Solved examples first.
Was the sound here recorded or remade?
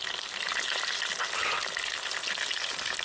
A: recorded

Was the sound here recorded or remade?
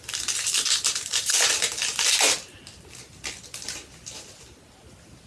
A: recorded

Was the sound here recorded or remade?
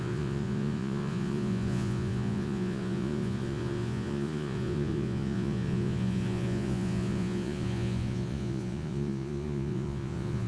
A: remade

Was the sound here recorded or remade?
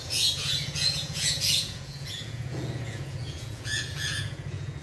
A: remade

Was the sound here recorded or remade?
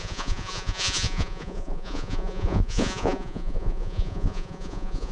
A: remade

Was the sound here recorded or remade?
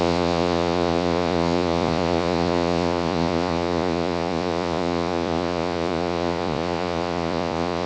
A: remade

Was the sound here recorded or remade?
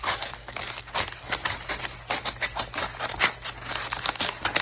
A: recorded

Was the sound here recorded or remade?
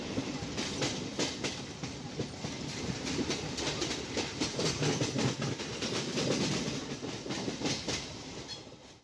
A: recorded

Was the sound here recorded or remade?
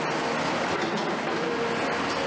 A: recorded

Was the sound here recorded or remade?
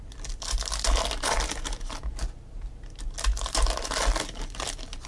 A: recorded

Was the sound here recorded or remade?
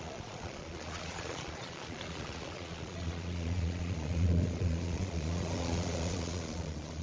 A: remade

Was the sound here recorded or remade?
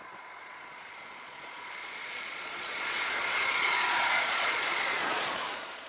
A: remade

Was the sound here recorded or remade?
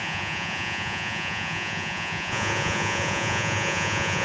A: remade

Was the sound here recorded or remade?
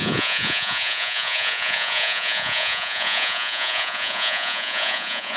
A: remade